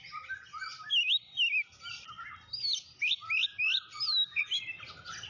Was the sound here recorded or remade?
recorded